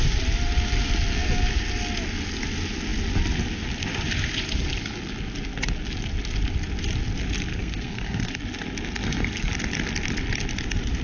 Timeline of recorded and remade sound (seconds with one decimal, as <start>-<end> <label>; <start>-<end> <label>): 0.0-7.5 recorded; 7.5-8.3 remade; 8.3-9.0 recorded; 9.0-9.5 remade; 9.5-11.0 recorded